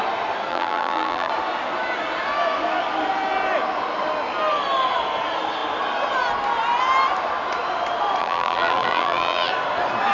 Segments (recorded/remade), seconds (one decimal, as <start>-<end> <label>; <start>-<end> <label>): 0.0-0.5 recorded; 0.5-1.3 remade; 1.3-8.2 recorded; 8.2-9.5 remade; 9.5-10.1 recorded